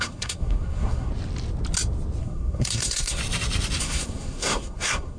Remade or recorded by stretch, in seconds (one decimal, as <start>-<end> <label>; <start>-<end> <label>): 0.0-1.1 remade; 1.1-2.2 recorded; 2.2-3.2 remade; 3.2-3.8 recorded; 3.8-5.2 remade